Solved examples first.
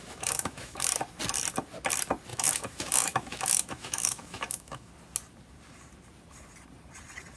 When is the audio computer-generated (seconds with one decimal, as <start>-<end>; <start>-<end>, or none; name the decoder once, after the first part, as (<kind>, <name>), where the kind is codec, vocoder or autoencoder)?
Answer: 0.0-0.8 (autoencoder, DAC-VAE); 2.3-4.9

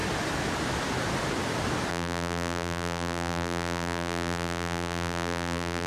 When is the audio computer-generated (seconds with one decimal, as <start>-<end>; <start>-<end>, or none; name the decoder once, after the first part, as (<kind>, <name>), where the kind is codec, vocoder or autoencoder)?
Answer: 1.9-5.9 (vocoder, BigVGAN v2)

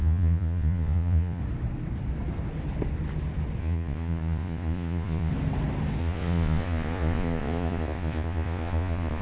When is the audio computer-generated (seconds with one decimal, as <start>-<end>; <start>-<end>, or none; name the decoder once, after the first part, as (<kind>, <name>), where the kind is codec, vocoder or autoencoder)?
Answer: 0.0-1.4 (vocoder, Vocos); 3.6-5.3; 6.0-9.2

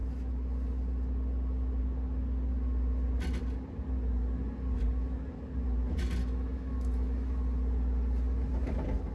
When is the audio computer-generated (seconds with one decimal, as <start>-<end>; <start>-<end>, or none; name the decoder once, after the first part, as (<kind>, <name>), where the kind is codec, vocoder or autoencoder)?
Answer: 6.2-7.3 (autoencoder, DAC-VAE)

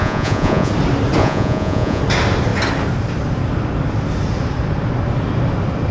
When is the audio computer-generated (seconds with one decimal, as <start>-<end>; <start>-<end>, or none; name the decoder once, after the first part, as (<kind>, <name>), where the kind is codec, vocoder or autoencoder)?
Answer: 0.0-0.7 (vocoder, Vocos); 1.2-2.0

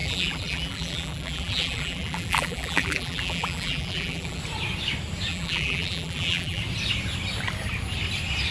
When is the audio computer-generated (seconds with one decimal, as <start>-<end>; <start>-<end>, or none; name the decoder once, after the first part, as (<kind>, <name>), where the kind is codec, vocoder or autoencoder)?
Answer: 0.0-4.4 (vocoder, BigVGAN v2); 5.3-6.6